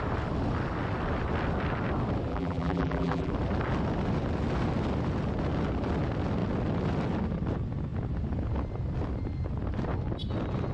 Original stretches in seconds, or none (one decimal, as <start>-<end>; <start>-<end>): 0.0-2.3; 3.3-10.7